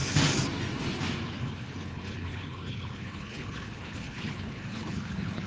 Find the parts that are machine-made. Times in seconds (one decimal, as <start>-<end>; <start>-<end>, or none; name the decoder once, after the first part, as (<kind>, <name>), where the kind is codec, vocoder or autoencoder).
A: 1.4-5.5 (codec, HILCodec)